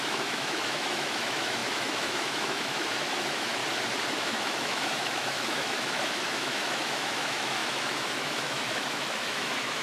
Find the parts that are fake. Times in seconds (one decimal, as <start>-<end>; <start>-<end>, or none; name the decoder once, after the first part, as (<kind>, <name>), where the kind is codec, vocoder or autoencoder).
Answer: 0.0-3.6 (autoencoder, DAC-VAE); 4.1-9.8